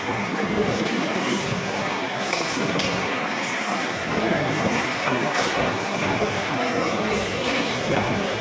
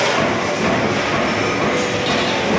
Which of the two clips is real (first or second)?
second